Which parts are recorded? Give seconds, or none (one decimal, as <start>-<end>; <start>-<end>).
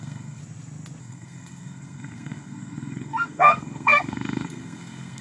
0.4-1.0